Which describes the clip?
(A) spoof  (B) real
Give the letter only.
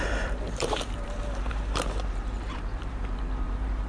A